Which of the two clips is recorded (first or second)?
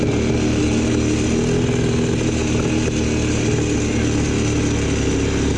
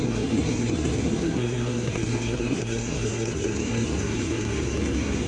first